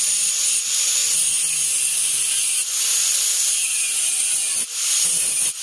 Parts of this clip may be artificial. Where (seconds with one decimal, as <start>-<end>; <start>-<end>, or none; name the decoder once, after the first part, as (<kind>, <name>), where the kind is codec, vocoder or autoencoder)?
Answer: none